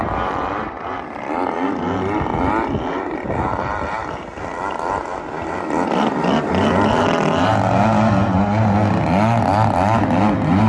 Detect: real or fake real